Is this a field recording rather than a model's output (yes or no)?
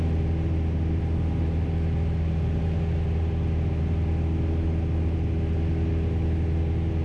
yes